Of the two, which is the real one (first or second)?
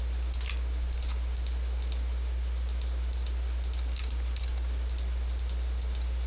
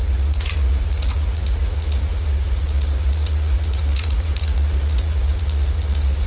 first